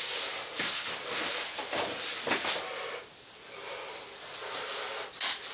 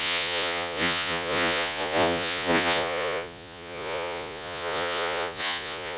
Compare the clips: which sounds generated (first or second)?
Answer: second